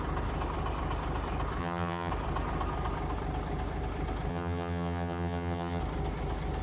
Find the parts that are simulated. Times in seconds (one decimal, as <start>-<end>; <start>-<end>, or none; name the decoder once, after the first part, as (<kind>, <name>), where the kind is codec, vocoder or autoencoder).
1.6-2.1 (vocoder, HiFi-GAN); 4.3-5.8